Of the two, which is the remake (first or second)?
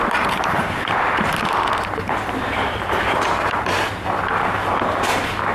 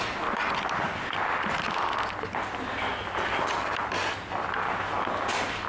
first